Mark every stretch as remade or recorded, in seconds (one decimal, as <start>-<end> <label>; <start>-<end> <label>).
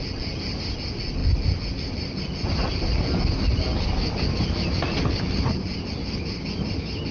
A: 0.0-7.1 recorded